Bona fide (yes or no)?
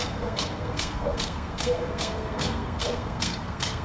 no